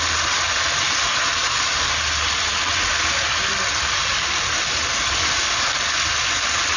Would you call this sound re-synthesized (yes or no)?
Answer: no